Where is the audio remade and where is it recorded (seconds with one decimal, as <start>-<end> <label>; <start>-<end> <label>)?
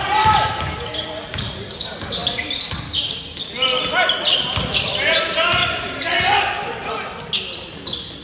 0.0-4.3 recorded; 4.3-6.0 remade; 6.0-8.2 recorded